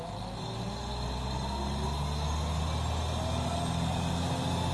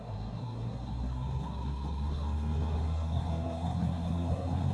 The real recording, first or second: first